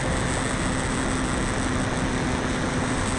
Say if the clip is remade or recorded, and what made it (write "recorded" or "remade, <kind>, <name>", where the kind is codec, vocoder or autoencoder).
recorded